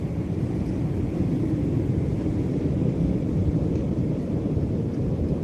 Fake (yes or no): no